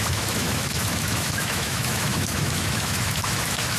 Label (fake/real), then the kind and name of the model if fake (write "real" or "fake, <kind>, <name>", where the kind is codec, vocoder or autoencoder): fake, autoencoder, DAC-VAE